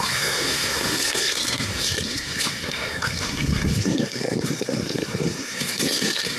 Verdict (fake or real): fake